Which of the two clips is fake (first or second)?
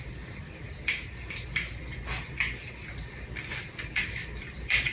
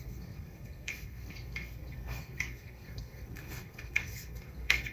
second